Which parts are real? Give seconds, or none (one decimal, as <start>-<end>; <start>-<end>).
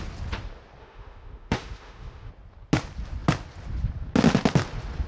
0.0-0.8; 2.3-5.1